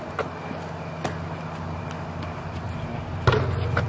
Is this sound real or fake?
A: real